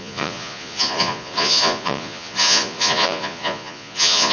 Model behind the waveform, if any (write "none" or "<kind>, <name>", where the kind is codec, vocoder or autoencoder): vocoder, Vocos